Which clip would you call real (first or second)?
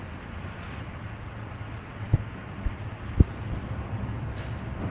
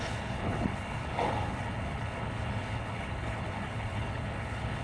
first